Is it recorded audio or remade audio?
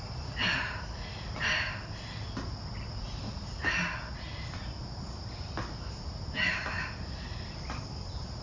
recorded